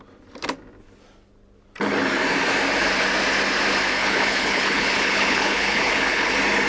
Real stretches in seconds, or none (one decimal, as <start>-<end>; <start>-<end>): 0.0-4.0; 6.3-6.7

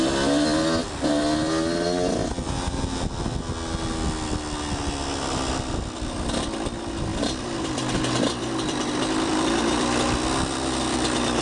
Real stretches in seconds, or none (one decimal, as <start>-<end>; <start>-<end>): 0.0-7.1

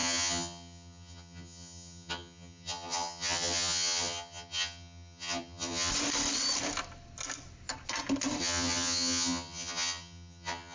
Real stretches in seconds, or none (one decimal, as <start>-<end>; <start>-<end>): 5.9-8.4

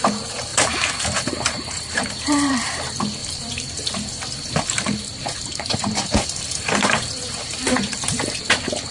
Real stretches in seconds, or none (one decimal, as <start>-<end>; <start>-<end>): 0.0-0.5; 2.5-3.2; 8.4-8.9

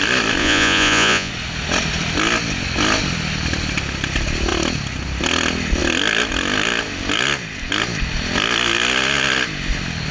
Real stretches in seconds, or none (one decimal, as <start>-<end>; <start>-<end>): 0.0-0.4; 1.3-10.1

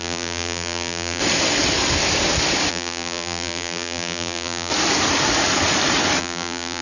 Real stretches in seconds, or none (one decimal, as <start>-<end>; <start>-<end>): 1.2-2.7; 4.7-6.2